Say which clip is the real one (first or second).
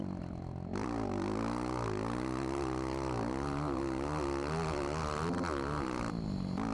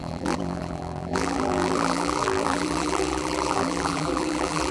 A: first